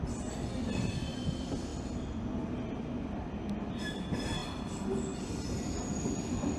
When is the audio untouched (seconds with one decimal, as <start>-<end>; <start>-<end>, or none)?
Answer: 0.0-6.6